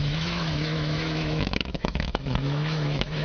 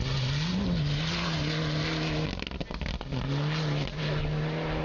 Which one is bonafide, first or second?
second